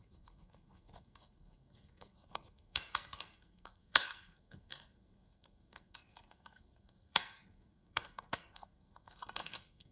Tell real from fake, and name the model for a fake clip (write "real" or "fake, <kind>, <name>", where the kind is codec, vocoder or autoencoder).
fake, codec, SNAC